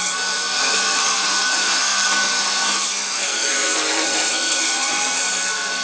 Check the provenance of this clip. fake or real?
fake